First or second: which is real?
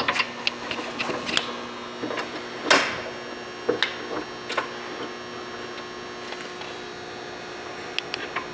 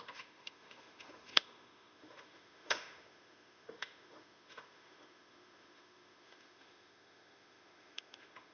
first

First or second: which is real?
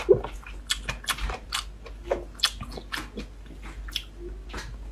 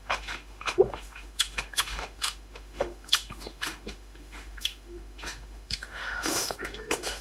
first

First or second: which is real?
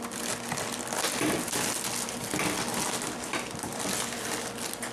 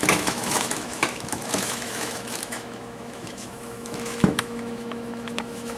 first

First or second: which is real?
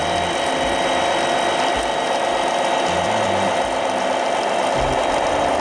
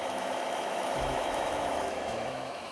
first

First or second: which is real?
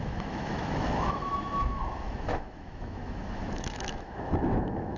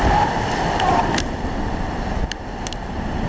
second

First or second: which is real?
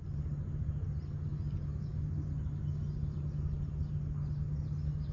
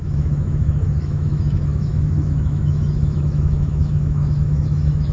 first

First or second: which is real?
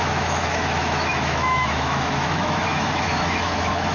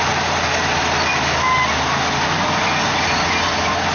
second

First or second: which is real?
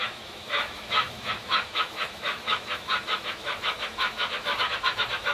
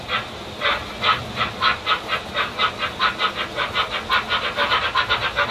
second